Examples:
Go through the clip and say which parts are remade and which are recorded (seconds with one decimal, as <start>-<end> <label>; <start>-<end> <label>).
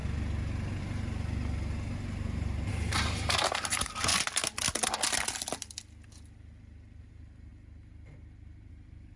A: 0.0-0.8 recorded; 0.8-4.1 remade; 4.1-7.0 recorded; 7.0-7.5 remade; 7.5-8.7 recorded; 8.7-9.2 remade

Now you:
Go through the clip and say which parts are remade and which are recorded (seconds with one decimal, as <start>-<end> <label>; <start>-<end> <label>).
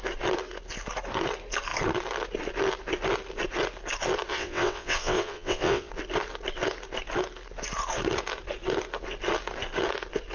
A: 0.0-4.3 recorded; 4.3-5.9 remade; 5.9-10.3 recorded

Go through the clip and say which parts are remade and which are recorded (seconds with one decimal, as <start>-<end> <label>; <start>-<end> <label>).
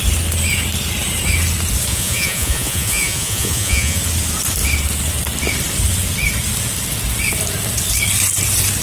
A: 0.0-1.9 recorded; 1.9-4.0 remade; 4.0-8.8 recorded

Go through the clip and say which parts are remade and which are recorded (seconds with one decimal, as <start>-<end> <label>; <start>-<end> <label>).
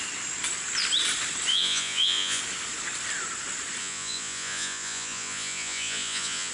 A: 0.0-1.5 recorded; 1.5-2.4 remade; 2.4-3.8 recorded; 3.8-6.5 remade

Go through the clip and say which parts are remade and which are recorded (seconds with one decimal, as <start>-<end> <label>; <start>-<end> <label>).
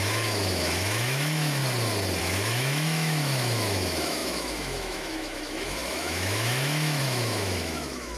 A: 0.0-1.6 remade; 1.6-2.2 recorded; 2.2-8.2 remade